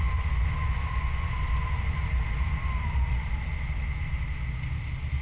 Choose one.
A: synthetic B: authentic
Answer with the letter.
B